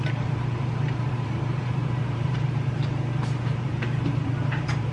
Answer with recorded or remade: remade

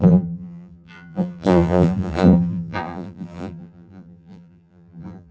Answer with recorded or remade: remade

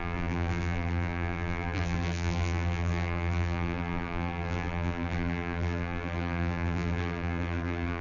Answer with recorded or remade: remade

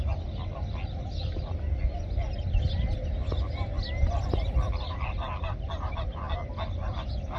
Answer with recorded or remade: recorded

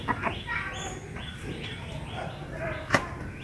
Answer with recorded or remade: remade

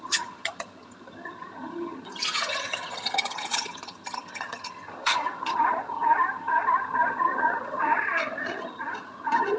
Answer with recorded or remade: remade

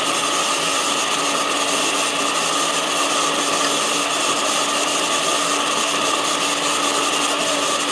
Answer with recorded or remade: recorded